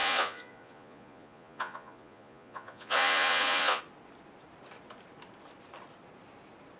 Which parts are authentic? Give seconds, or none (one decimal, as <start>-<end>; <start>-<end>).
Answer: 3.8-6.8